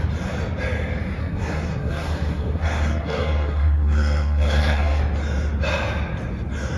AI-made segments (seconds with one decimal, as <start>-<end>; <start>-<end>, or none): 1.2-5.0